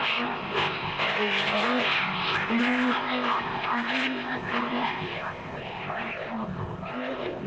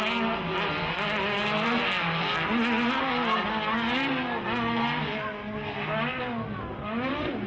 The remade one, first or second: first